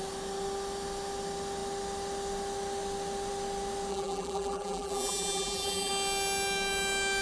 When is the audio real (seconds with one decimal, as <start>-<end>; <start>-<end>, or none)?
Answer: 0.0-3.9; 5.9-7.2